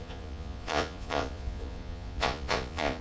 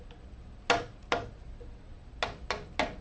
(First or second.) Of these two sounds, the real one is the second